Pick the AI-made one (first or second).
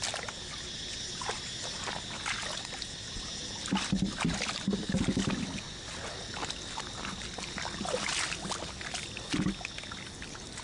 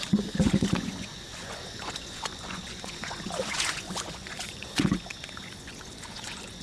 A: second